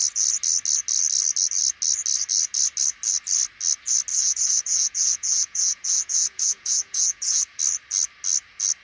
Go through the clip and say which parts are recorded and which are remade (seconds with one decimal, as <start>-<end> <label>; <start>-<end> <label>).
0.0-4.1 recorded; 4.1-7.6 remade; 7.6-8.8 recorded